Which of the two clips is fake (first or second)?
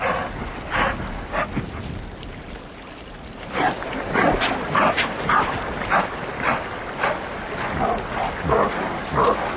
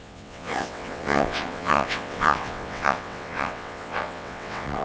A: second